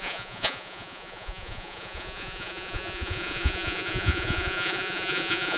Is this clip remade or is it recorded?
remade